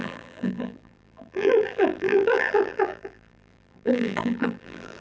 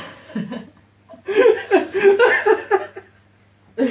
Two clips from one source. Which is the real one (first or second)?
second